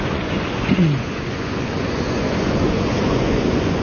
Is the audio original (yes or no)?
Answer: no